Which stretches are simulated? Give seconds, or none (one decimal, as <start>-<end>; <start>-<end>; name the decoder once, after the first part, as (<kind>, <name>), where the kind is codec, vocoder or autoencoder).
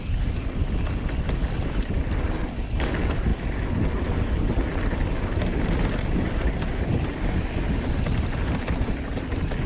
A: none